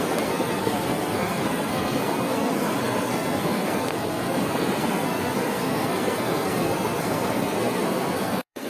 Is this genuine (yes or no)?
no